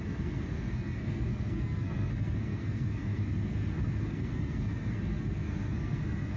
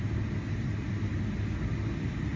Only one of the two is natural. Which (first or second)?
second